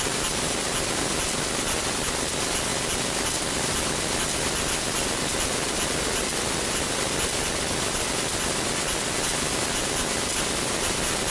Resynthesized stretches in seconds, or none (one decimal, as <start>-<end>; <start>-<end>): none